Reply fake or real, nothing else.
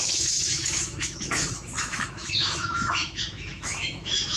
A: fake